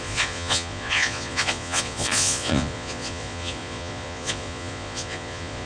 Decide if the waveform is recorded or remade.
remade